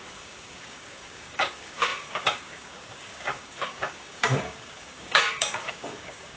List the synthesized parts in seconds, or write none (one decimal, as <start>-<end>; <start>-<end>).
0.0-6.4